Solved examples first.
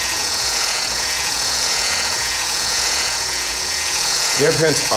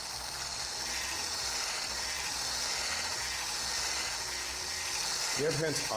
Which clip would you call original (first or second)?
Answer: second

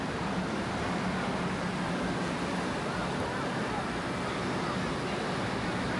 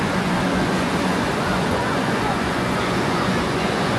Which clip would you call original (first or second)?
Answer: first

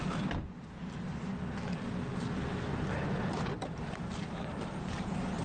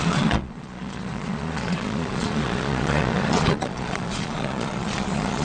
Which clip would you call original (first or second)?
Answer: first